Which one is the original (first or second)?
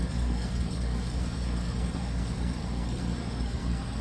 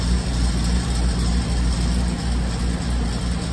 second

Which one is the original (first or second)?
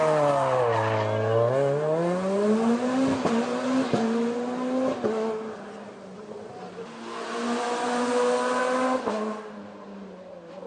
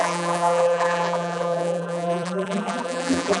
first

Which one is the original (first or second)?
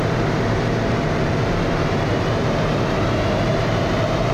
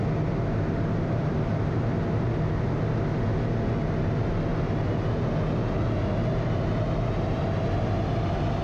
second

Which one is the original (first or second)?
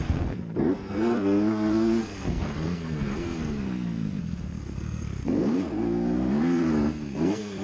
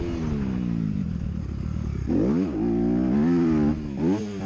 second